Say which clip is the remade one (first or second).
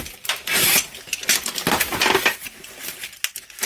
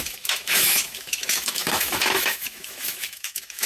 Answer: second